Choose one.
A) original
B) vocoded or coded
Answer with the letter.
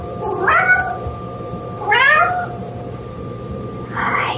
B